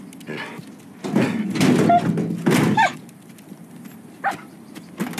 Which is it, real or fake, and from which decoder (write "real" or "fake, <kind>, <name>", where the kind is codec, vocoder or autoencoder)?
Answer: real